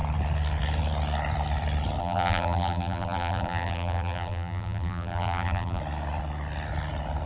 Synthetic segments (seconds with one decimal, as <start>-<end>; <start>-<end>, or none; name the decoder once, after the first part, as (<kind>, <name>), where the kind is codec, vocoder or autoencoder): 2.0-5.8 (vocoder, BigVGAN v2)

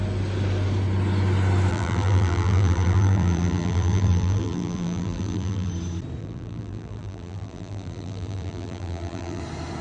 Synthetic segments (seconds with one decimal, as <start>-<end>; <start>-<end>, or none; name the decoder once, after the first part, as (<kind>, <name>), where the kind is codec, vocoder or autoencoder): 1.7-5.7 (vocoder, BigVGAN v2); 6.2-9.4

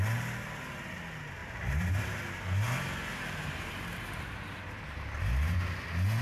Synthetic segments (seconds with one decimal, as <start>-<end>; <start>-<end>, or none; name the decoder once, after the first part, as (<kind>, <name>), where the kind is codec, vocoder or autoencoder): 1.4-2.0 (vocoder, BigVGAN v2); 3.1-4.8

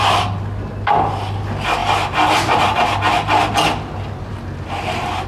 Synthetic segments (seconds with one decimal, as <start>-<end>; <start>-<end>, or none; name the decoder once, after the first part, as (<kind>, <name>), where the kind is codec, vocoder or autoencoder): none